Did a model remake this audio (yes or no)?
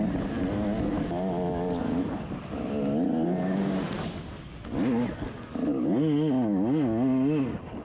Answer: no